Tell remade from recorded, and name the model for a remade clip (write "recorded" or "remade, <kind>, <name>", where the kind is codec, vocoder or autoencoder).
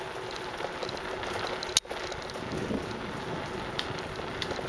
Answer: recorded